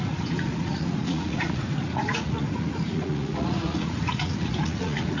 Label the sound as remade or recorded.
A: remade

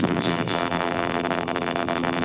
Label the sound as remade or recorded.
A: remade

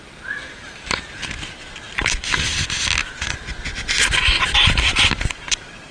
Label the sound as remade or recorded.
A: recorded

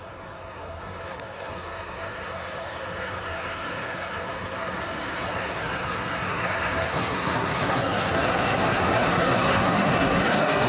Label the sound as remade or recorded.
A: remade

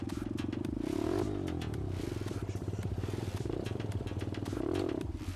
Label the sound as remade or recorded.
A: remade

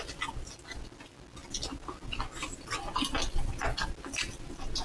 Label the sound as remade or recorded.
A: recorded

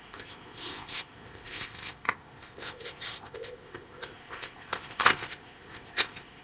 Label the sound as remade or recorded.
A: remade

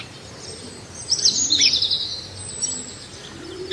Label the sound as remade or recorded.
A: recorded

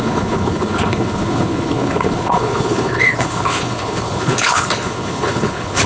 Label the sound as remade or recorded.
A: remade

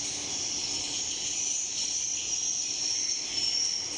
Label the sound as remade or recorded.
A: recorded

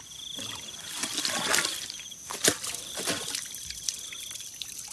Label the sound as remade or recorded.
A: recorded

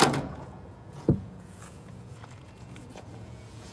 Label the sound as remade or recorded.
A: remade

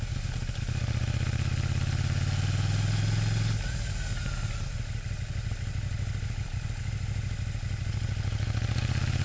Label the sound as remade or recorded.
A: recorded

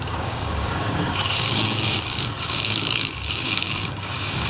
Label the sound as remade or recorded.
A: remade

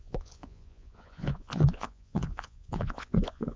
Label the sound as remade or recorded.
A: remade